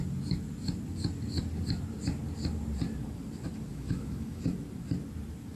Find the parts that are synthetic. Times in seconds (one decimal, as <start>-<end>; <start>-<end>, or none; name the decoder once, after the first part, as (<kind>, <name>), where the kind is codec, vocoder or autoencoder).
3.7-4.4 (autoencoder, DAC-VAE)